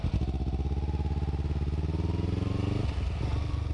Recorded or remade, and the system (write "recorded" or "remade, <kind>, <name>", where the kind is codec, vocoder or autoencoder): recorded